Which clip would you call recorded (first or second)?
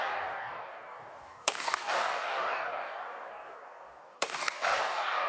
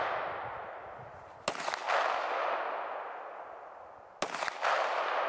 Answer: second